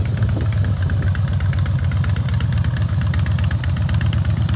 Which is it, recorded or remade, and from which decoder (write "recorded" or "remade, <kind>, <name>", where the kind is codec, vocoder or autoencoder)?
recorded